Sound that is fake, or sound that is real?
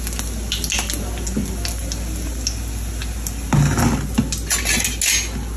real